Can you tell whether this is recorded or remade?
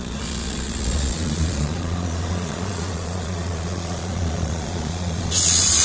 remade